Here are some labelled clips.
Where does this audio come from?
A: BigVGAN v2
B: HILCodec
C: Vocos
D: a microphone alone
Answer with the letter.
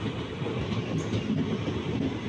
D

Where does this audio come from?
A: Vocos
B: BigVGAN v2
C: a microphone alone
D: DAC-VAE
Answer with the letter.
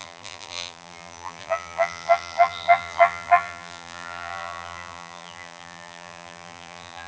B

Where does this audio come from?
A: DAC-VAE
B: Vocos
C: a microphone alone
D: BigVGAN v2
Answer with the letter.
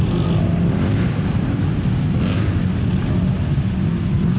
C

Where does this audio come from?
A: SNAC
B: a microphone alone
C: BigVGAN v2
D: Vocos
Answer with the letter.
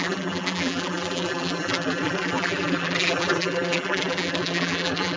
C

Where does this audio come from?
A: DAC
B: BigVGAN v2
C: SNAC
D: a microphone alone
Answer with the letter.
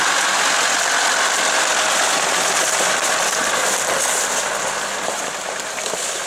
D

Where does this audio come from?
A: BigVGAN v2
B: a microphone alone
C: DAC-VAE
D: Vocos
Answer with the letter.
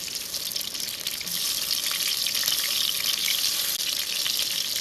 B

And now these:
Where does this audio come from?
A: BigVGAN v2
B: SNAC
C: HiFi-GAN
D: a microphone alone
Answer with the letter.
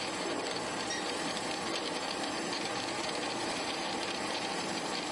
A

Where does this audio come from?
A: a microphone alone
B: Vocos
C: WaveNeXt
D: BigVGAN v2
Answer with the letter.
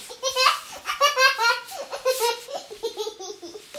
A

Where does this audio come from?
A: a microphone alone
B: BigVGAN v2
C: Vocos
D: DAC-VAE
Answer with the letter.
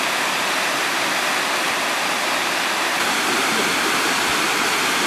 B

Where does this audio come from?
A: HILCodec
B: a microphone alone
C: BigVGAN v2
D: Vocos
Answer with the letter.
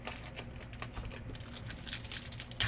B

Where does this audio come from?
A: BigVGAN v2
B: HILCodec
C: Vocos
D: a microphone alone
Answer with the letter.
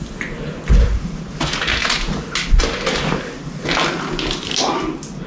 D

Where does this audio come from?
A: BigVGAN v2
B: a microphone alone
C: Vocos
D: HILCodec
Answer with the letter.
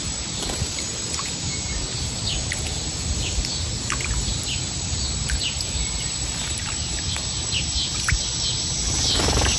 B